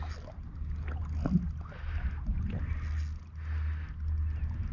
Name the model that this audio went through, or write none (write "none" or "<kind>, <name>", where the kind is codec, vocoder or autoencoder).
none